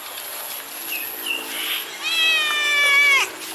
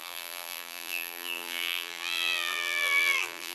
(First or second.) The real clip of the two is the first